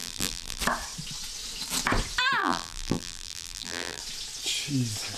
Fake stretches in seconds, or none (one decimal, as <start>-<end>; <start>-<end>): 0.0-0.6; 2.4-4.0